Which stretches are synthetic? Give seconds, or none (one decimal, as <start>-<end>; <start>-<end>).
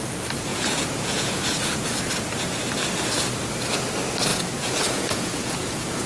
0.5-2.0; 4.3-6.1